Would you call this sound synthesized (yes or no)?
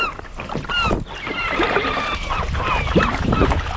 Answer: yes